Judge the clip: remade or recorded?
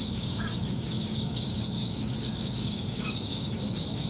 remade